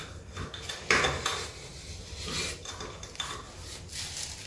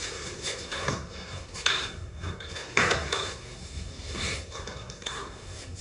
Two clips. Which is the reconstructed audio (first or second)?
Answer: second